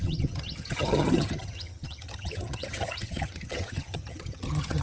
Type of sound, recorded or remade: remade